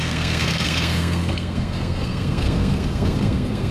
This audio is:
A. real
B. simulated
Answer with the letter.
B